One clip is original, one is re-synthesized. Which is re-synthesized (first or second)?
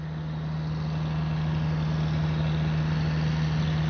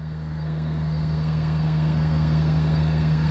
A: second